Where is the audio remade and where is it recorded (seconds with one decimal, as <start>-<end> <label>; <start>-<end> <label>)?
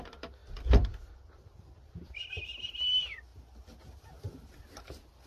0.0-5.3 recorded